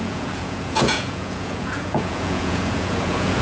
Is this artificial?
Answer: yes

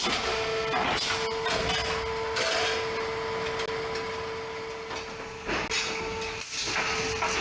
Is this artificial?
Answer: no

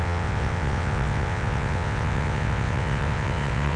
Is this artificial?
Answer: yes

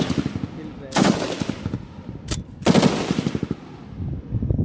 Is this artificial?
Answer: no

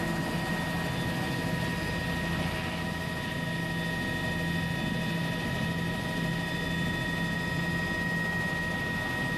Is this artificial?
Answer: no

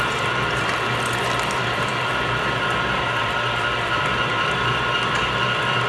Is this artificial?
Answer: yes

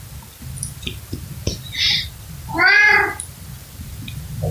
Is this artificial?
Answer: no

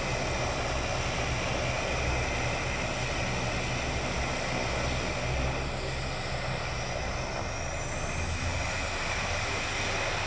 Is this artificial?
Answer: no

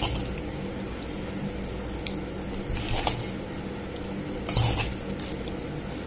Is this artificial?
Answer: no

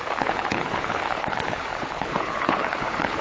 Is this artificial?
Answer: yes